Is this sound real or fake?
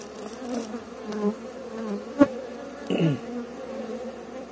real